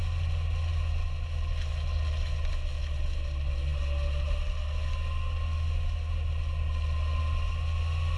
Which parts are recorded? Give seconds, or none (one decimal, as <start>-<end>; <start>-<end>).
0.0-8.2